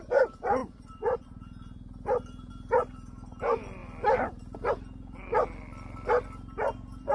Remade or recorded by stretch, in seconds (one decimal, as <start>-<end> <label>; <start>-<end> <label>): 0.0-7.1 recorded